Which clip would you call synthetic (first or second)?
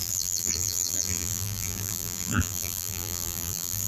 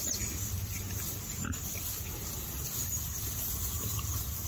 first